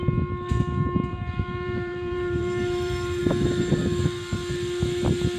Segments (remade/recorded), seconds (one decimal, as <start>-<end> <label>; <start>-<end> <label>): 0.0-1.1 recorded; 1.1-3.2 remade; 3.2-5.4 recorded